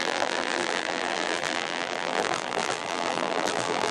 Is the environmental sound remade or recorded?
remade